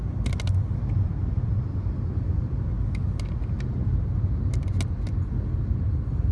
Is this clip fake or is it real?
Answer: real